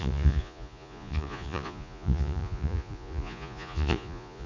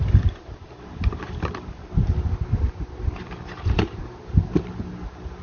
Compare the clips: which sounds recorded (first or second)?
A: second